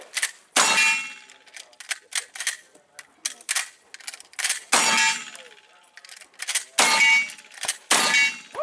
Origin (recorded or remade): recorded